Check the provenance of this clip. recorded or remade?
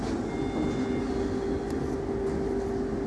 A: recorded